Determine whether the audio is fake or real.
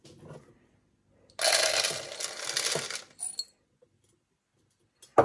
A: real